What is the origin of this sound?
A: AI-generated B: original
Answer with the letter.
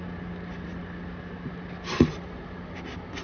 B